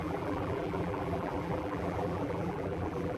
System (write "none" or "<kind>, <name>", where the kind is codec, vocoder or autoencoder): vocoder, BigVGAN v2